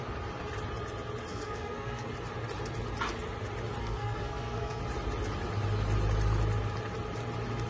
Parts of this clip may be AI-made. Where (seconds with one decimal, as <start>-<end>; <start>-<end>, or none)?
1.3-2.1; 3.8-4.8